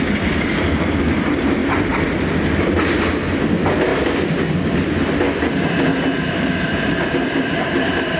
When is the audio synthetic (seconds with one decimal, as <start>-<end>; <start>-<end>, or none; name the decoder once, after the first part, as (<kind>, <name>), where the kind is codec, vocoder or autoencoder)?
5.9-7.1 (vocoder, BigVGAN v2)